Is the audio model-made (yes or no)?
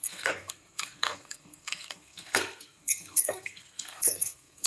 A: yes